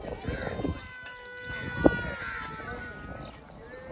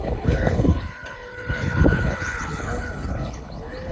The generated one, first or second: second